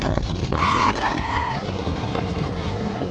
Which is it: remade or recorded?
remade